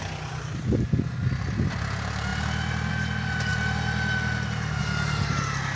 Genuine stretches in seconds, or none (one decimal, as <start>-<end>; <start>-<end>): 0.0-5.8